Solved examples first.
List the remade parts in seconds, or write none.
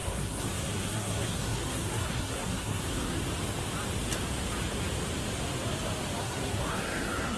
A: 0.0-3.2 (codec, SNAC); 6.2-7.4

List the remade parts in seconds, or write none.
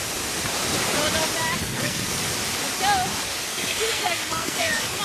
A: 1.6-2.2 (codec, SNAC); 3.4-5.0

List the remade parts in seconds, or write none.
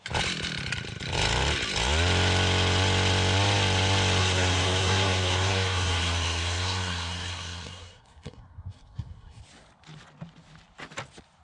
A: 4.2-9.4 (codec, SNAC)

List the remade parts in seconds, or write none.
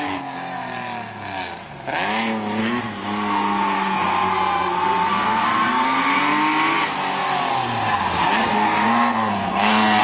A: 2.6-6.2 (codec, SNAC); 8.4-10.0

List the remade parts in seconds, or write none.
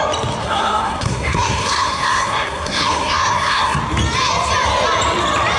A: 0.4-3.8 (codec, SNAC)